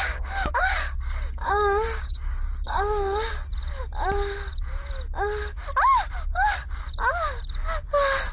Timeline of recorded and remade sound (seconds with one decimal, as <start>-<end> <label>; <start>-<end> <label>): 0.0-3.3 remade; 3.3-8.3 recorded